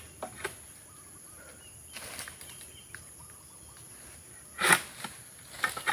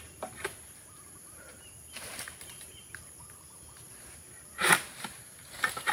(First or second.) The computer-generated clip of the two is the second